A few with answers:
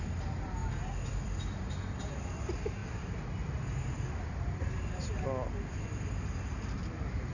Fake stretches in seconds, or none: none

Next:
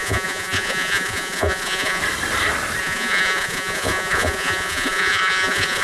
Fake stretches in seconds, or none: 0.0-2.0; 2.8-5.8

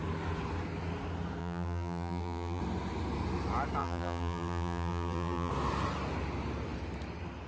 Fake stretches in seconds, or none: 1.4-2.6; 3.8-5.5

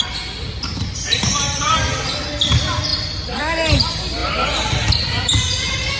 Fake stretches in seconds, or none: 0.7-1.7; 2.9-3.4

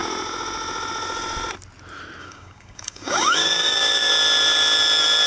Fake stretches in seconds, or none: 2.2-4.1

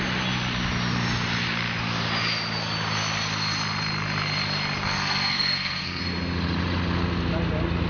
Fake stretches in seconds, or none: 4.8-6.0